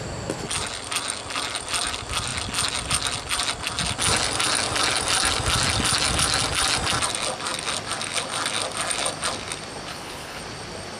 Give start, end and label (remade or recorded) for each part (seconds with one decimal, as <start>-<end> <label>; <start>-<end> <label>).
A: 0.0-9.9 recorded; 9.9-10.4 remade; 10.4-11.0 recorded